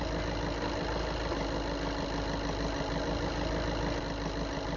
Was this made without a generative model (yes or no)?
yes